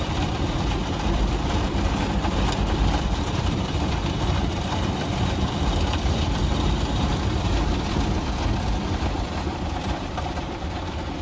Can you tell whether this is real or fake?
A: fake